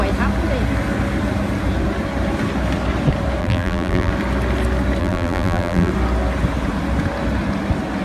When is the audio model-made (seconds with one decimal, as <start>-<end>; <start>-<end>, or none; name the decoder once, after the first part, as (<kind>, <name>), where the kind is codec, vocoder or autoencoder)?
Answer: 3.4-4.1 (vocoder, BigVGAN v2); 5.0-5.9